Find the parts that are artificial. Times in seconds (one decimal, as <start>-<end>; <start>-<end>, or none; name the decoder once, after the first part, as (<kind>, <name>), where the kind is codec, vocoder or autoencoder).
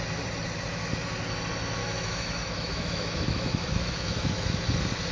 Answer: 1.8-4.6 (autoencoder, DAC-VAE)